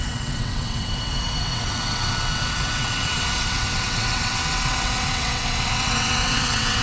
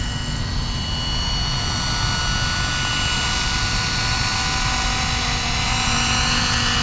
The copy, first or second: first